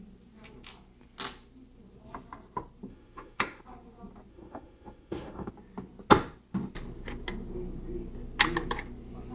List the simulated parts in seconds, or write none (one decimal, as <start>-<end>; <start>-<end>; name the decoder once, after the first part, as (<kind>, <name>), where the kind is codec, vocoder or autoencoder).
2.9-3.6 (autoencoder, DAC-VAE); 4.3-5.5